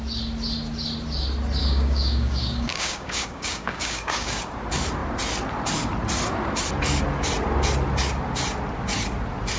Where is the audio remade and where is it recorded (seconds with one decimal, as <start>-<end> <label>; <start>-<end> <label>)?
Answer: 0.0-1.6 recorded; 1.6-4.4 remade; 4.4-9.6 recorded